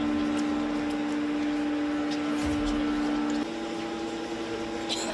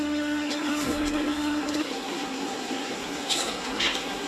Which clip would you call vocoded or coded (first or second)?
second